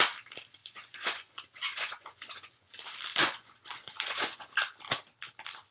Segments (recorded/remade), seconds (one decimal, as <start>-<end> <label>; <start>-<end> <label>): 0.0-0.6 recorded; 0.6-2.7 remade; 2.7-3.2 recorded; 3.2-4.5 remade; 4.5-5.7 recorded